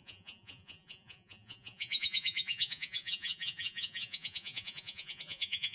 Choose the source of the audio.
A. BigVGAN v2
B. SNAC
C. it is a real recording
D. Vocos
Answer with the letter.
D